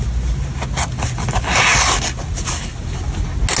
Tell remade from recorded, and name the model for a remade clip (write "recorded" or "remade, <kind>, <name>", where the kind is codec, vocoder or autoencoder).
recorded